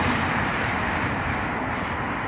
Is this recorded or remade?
recorded